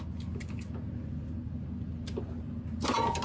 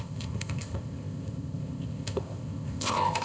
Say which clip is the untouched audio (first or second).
first